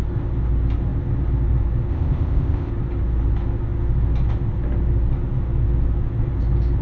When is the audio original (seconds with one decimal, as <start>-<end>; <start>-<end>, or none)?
0.0-1.9; 2.7-6.8